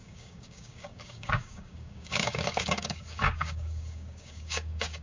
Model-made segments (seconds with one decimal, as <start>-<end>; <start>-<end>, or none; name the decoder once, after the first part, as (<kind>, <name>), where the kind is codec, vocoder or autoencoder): 0.0-5.0 (codec, DAC)